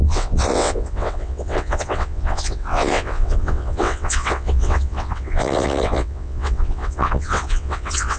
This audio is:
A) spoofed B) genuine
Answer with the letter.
A